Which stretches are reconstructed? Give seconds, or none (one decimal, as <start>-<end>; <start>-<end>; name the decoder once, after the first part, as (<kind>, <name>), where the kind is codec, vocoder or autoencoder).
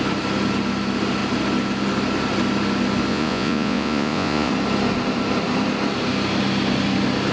3.1-4.5 (vocoder, Vocos)